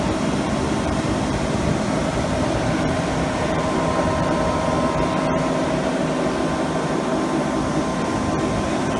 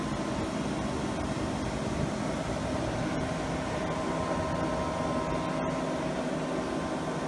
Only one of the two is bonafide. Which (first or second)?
second